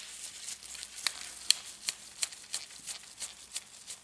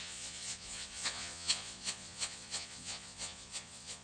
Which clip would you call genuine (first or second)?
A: first